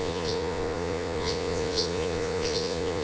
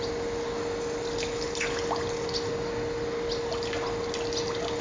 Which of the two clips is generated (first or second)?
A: first